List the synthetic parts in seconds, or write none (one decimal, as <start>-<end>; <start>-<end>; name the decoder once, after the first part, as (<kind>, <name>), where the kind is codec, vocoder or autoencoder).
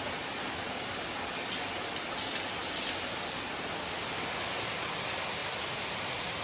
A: none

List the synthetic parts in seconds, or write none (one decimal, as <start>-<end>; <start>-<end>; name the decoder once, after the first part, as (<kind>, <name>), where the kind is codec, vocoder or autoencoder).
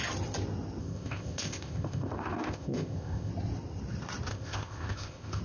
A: 0.8-3.3 (codec, ZipCodec); 4.3-5.4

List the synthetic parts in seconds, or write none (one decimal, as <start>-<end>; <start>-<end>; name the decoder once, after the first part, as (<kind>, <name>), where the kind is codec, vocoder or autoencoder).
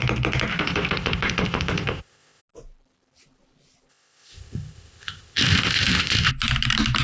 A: 0.5-2.4 (codec, ZipCodec); 3.9-6.3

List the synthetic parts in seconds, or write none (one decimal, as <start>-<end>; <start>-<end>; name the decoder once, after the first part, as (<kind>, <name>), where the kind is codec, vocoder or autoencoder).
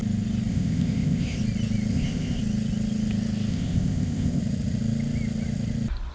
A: 0.5-1.4 (codec, ZipCodec); 1.9-2.4; 3.5-4.4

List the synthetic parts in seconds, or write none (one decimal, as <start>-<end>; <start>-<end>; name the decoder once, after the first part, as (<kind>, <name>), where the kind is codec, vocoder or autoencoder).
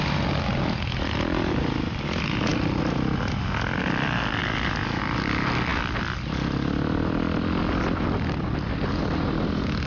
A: none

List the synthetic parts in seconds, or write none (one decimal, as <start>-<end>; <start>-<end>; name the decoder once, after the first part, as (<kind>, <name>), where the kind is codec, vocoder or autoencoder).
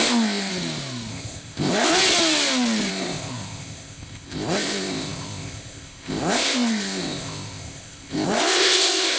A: 0.0-0.5 (codec, ZipCodec); 1.1-1.9; 2.9-9.2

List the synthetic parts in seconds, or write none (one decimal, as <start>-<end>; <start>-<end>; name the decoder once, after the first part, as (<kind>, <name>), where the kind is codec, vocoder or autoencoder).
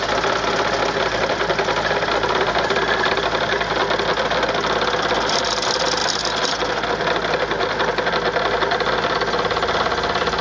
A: none